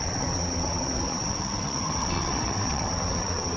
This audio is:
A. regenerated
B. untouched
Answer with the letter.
A